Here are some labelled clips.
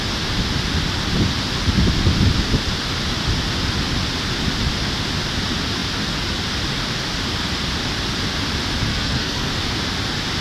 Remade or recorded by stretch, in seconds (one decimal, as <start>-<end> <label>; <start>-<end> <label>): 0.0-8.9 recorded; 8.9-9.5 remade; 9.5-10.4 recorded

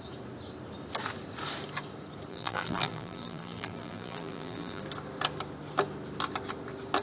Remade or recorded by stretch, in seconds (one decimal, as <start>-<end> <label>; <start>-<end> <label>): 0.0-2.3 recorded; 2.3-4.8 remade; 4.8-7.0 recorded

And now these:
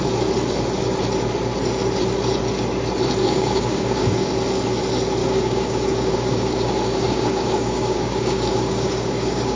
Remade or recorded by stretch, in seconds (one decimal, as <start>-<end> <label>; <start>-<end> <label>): 0.0-3.2 recorded; 3.2-4.3 remade; 4.3-5.2 recorded; 5.2-9.6 remade

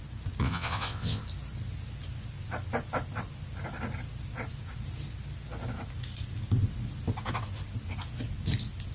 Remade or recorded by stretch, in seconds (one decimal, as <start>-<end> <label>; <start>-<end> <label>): 0.0-0.4 recorded; 0.4-1.2 remade; 1.2-8.9 recorded

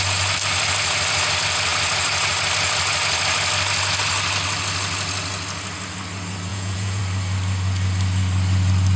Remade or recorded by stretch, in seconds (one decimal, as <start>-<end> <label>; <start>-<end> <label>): 0.0-6.5 recorded; 6.5-7.0 remade; 7.0-9.0 recorded

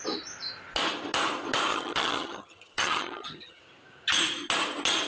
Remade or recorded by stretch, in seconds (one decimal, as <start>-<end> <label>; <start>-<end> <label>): 0.0-1.7 recorded; 1.7-3.6 remade; 3.6-5.1 recorded